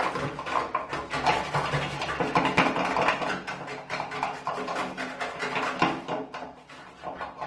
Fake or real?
real